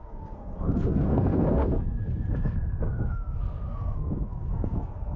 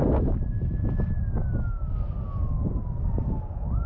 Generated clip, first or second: first